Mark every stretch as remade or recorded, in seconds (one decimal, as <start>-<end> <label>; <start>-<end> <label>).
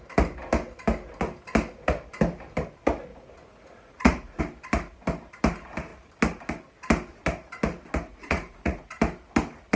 0.0-3.1 recorded; 3.1-4.4 remade; 4.4-8.1 recorded; 8.1-8.9 remade; 8.9-9.8 recorded